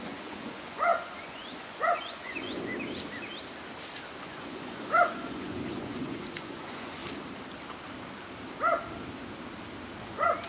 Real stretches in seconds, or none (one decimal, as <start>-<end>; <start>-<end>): 2.7-4.2; 7.0-10.0